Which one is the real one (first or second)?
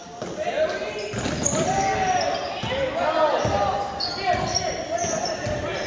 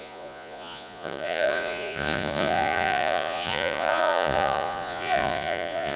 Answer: first